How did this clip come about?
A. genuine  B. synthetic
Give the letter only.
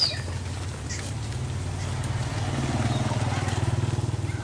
A